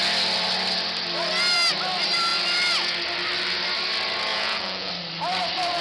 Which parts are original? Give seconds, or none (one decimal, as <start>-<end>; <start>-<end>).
0.0-4.3; 4.9-5.8